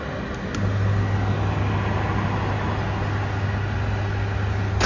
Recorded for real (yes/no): yes